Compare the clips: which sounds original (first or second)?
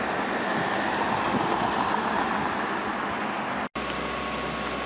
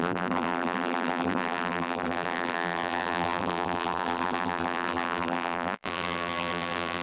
first